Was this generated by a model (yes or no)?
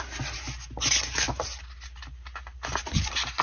no